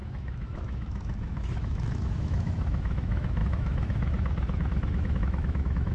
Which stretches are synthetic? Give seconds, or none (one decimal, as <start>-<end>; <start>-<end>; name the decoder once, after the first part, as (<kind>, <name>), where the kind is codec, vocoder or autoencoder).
0.0-5.9 (autoencoder, DAC-VAE)